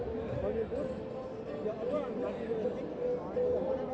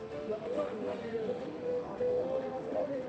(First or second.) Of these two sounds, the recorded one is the first